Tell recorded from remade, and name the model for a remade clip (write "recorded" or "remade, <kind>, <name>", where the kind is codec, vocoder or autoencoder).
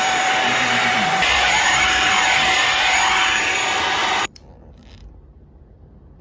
remade, vocoder, BigVGAN v2